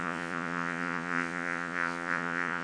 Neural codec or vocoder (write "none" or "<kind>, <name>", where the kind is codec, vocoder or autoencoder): vocoder, Vocos